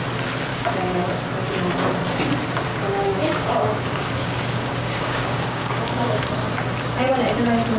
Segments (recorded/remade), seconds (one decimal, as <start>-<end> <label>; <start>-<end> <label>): 0.0-0.5 recorded; 0.5-1.1 remade; 1.1-2.7 recorded; 2.7-6.2 remade; 6.2-7.8 recorded